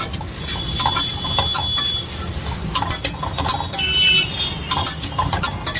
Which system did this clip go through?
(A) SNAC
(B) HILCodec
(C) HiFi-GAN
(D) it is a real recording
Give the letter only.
D